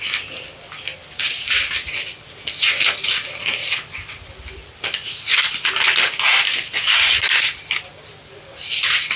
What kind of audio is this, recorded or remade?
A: recorded